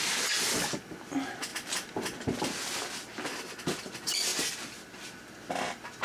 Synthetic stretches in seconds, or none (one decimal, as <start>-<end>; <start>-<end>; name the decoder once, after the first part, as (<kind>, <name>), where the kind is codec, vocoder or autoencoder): none